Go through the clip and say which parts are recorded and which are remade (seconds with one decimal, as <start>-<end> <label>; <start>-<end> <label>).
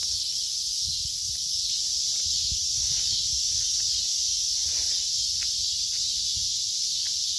0.0-7.4 remade